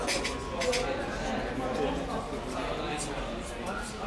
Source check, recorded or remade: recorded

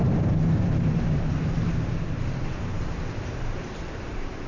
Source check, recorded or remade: remade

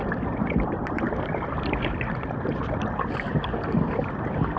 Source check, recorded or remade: recorded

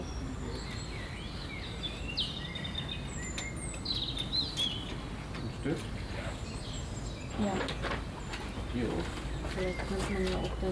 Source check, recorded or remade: recorded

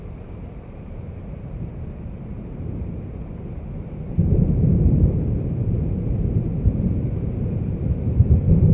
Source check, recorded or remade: remade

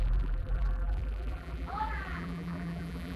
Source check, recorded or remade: remade